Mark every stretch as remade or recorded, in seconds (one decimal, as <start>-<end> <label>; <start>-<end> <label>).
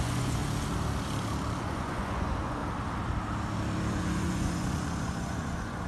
0.0-0.4 remade; 0.4-1.6 recorded; 1.6-2.6 remade; 2.6-3.9 recorded; 3.9-5.9 remade